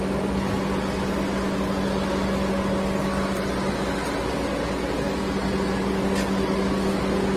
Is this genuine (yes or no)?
yes